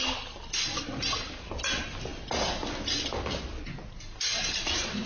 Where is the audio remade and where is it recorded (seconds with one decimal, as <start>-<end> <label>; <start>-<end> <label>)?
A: 0.0-5.1 recorded